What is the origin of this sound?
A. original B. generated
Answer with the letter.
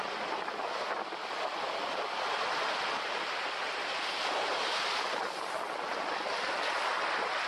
A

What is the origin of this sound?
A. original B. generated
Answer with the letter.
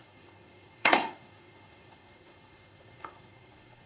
B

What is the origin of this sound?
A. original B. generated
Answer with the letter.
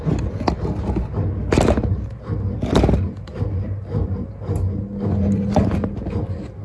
A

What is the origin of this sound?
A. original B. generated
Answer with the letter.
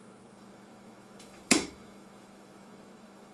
B